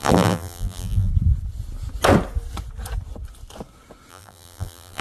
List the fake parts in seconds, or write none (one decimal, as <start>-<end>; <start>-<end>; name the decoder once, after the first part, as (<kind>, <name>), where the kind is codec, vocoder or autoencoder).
0.0-1.1 (vocoder, BigVGAN v2); 4.1-5.0